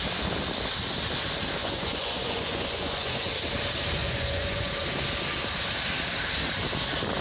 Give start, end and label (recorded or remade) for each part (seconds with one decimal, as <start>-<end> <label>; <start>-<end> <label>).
0.0-1.6 recorded; 1.6-3.3 remade; 3.3-4.0 recorded; 4.0-4.7 remade; 4.7-7.2 recorded